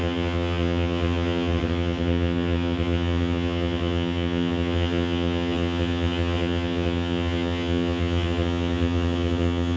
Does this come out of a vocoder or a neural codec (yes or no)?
yes